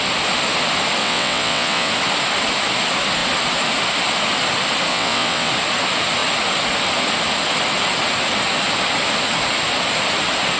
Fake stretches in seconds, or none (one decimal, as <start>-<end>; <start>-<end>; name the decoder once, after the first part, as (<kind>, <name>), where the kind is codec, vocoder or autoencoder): 1.0-1.9 (vocoder, WaveNeXt); 4.9-5.5